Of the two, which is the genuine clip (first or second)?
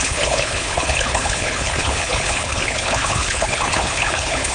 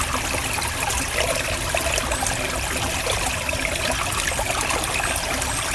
second